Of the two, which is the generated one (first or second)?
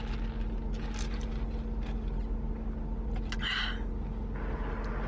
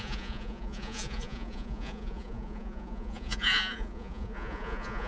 second